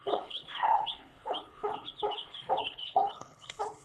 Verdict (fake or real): fake